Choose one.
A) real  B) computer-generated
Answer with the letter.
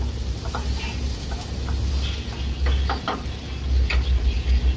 A